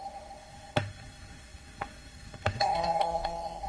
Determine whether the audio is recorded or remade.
remade